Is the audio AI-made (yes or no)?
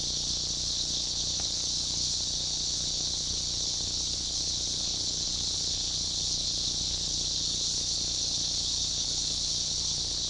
yes